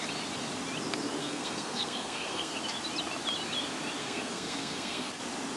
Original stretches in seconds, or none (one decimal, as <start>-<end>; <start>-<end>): 0.0-1.2; 2.6-4.0; 5.1-5.6